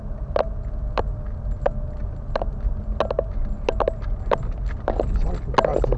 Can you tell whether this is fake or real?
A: real